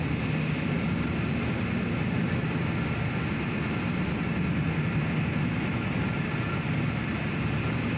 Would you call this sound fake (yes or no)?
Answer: no